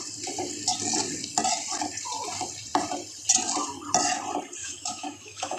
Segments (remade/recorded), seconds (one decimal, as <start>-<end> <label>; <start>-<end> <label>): 0.0-4.6 recorded; 4.6-5.6 remade